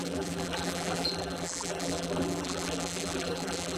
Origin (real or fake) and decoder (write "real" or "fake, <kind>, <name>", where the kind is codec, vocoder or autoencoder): fake, vocoder, BigVGAN v2